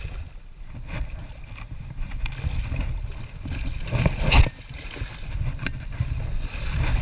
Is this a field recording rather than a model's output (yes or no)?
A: yes